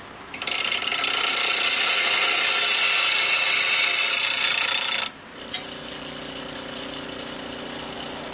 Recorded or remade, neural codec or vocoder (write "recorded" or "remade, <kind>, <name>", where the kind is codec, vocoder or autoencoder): recorded